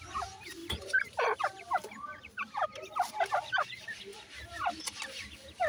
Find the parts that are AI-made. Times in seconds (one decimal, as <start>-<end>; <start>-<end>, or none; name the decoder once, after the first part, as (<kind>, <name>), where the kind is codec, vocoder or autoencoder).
none